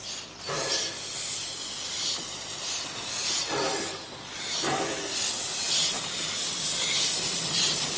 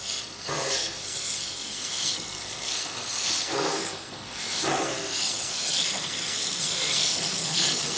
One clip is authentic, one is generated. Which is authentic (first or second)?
first